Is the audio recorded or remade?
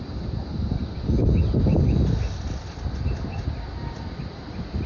recorded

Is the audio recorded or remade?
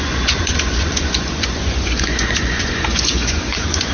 remade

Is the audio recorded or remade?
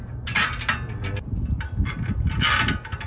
recorded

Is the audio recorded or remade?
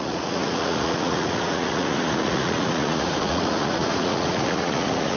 remade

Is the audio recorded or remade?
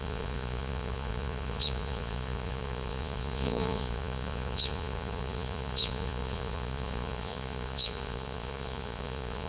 remade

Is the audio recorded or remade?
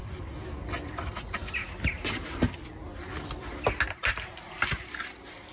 recorded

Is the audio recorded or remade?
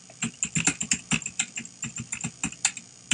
recorded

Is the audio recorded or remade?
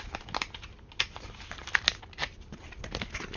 recorded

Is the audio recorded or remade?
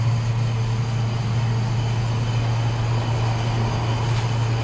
recorded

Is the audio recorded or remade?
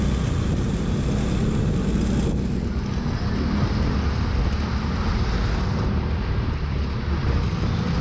recorded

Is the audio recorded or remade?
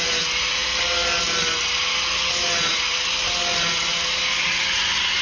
recorded